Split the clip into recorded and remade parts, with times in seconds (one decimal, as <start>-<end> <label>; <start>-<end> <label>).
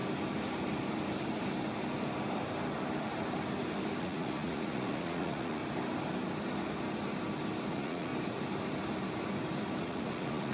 0.0-4.0 recorded; 4.0-5.6 remade; 5.6-7.7 recorded; 7.7-8.1 remade; 8.1-9.8 recorded; 9.8-10.5 remade